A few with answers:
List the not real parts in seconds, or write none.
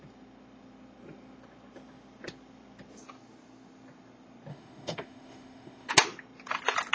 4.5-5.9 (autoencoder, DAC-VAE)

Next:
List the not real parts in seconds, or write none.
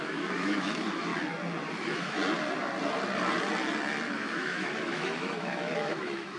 0.0-1.1 (autoencoder, DAC-VAE); 1.7-2.2; 4.1-6.4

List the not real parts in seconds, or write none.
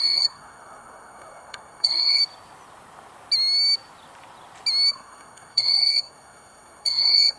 0.0-2.2 (codec, SNAC); 4.9-7.4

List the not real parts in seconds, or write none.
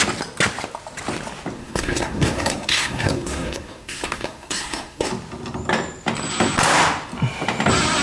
1.6-5.1 (codec, SNAC)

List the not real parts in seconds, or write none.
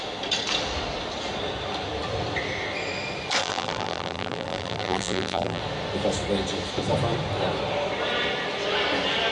3.4-5.6 (vocoder, BigVGAN v2)